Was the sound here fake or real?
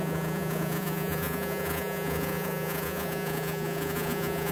fake